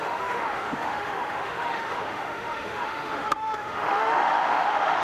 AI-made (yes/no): yes